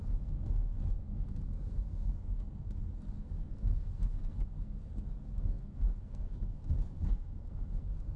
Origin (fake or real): fake